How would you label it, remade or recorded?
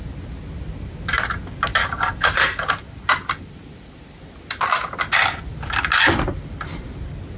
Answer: recorded